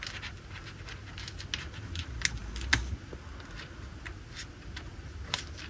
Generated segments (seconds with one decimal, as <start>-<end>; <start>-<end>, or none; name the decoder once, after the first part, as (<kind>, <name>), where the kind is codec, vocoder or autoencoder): none